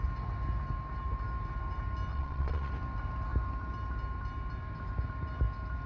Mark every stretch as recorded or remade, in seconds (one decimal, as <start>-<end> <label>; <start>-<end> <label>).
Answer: 0.0-2.1 recorded; 2.1-2.7 remade; 2.7-5.9 recorded